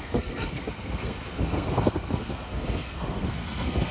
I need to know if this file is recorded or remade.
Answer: remade